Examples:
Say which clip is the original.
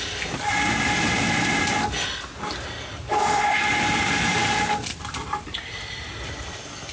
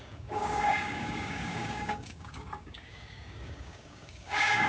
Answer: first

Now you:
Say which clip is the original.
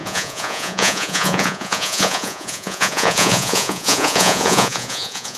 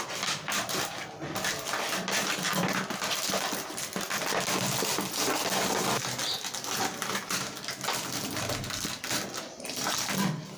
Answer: second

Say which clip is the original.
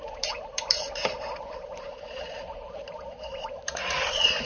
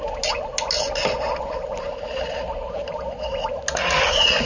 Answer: second